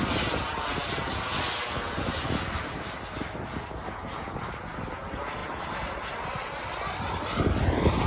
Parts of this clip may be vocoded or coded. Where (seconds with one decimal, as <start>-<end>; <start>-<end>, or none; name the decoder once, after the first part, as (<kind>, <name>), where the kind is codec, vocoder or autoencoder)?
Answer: none